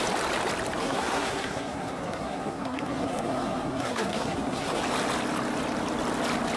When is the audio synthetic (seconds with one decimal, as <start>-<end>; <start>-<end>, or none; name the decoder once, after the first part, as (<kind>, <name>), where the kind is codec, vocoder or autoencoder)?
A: 0.8-4.8 (codec, SNAC)

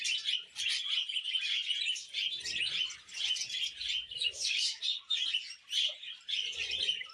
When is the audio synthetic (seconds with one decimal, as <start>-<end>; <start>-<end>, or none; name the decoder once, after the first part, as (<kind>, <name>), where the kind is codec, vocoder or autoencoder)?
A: none

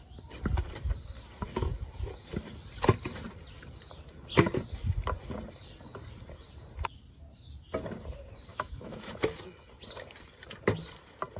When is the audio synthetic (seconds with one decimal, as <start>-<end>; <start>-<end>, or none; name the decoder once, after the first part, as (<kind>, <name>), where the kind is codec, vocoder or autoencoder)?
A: 8.5-9.1 (autoencoder, DAC-VAE)

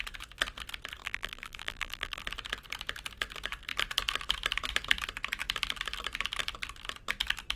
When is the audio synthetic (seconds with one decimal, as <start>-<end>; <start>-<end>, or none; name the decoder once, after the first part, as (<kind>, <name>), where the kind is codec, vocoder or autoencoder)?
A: 1.0-2.2 (vocoder, BigVGAN v2)